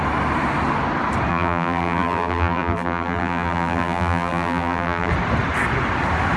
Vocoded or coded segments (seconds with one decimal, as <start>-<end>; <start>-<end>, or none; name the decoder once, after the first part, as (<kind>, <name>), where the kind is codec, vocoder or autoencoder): 1.3-5.1 (vocoder, BigVGAN v2)